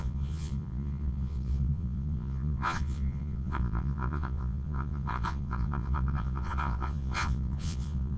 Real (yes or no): no